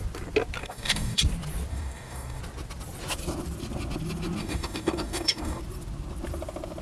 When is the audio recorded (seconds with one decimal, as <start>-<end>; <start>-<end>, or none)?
0.0-0.6; 1.2-1.7; 2.4-4.4; 5.6-6.8